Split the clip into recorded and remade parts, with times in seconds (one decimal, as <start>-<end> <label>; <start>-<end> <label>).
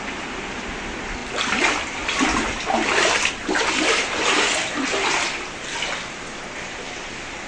0.0-7.5 recorded